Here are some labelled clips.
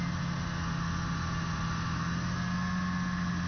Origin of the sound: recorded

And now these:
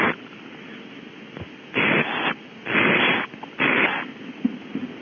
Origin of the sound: recorded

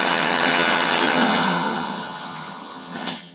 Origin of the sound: remade